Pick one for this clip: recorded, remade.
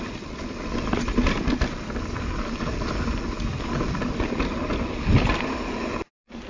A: recorded